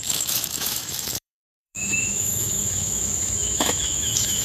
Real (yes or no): no